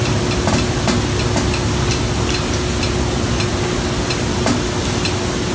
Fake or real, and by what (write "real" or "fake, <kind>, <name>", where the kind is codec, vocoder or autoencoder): real